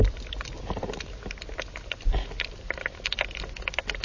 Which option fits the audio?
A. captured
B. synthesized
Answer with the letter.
A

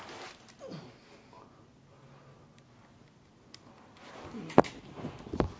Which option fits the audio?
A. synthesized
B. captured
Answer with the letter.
B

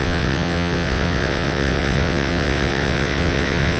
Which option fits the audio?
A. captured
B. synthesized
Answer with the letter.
B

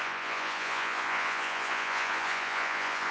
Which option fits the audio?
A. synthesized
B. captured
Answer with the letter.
A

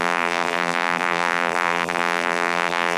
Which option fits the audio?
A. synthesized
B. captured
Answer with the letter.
A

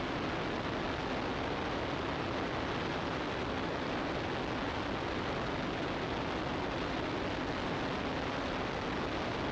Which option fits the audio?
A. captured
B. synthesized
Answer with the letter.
A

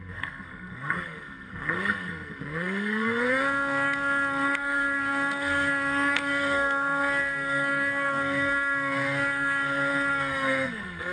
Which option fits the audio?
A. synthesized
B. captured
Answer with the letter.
A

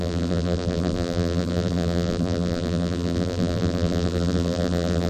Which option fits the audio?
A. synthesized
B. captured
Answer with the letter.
A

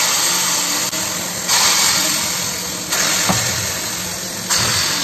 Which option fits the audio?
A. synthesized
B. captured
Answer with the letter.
B